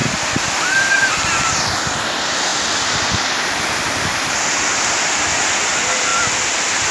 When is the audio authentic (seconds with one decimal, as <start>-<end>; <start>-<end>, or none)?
0.0-6.9